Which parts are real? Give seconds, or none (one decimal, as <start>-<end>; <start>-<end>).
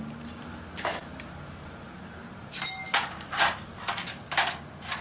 0.0-5.0